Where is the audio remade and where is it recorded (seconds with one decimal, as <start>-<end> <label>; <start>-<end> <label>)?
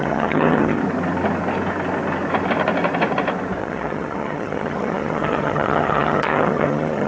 0.0-0.8 remade; 0.8-3.6 recorded; 3.6-7.1 remade